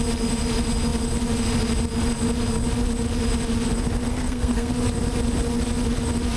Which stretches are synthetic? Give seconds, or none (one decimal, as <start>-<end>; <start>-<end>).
4.1-4.7